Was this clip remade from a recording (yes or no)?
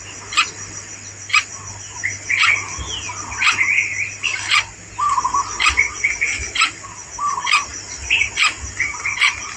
no